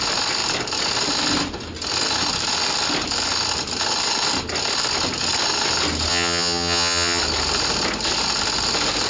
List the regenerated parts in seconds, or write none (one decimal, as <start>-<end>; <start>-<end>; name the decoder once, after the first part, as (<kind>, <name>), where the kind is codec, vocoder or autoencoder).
6.1-7.2 (vocoder, HiFi-GAN)